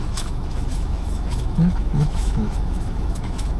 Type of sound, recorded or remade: remade